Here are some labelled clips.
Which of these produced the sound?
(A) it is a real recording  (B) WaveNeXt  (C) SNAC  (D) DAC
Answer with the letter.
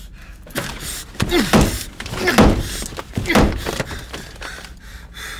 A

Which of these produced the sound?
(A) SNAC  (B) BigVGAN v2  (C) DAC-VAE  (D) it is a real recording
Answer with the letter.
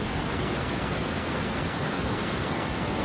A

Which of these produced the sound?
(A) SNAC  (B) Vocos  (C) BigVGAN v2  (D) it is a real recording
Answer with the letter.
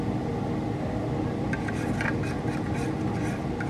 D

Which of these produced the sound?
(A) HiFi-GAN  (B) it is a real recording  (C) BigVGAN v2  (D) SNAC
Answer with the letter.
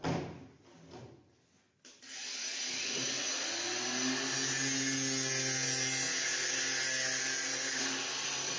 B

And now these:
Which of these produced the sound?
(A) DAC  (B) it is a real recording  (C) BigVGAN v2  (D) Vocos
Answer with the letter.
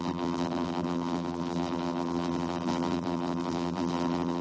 C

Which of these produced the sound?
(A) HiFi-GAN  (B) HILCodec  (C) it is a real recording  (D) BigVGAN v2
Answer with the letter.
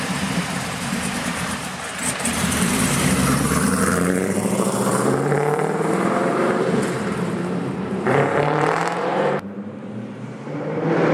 D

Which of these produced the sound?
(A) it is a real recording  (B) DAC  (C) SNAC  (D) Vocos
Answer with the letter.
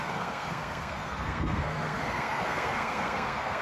C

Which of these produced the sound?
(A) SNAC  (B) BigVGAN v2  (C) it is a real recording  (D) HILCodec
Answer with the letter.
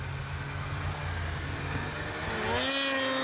C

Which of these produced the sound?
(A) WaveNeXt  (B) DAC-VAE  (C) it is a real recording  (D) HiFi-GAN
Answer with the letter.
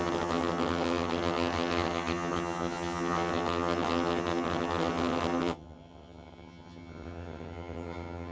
D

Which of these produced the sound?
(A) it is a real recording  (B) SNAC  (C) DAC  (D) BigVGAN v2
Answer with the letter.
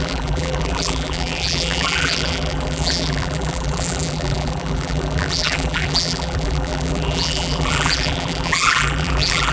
D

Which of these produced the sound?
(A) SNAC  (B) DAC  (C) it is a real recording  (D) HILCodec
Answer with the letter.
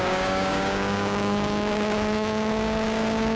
B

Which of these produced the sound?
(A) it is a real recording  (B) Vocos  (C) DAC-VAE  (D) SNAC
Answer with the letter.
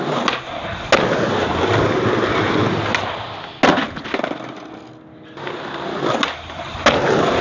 A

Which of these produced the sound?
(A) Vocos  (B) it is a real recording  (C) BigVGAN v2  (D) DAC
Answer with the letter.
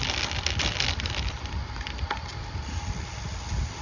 B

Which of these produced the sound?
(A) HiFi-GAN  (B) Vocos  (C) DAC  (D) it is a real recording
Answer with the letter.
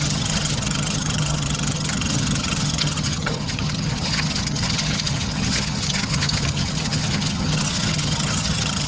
A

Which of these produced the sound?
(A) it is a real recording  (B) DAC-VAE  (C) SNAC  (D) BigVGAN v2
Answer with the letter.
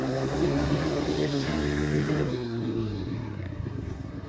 C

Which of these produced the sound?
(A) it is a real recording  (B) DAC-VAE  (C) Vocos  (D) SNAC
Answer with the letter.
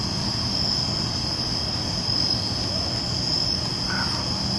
A